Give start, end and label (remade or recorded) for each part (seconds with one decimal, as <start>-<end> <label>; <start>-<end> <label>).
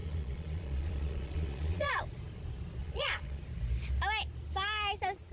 0.0-2.0 remade; 2.0-2.8 recorded; 2.8-3.4 remade; 3.4-5.3 recorded